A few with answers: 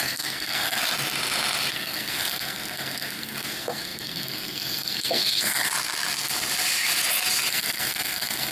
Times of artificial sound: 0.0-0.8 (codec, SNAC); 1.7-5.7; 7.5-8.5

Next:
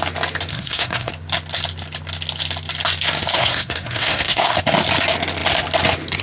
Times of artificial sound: 0.5-1.1 (codec, SNAC); 3.4-4.6